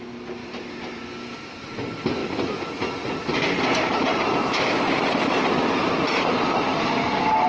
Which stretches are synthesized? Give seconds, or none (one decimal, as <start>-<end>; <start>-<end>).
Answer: 0.4-1.0; 3.9-6.3